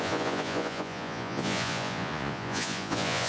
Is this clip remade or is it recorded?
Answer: remade